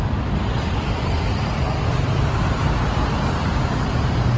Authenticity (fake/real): real